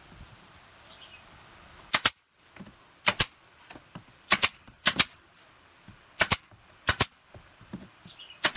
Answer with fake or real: real